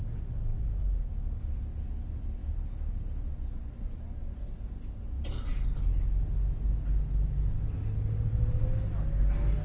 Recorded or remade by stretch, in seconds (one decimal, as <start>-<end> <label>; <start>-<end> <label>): 0.0-0.5 recorded; 0.5-1.6 remade; 1.6-2.4 recorded; 2.4-3.0 remade; 3.0-9.6 recorded